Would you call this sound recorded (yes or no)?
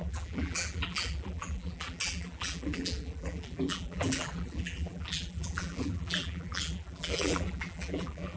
no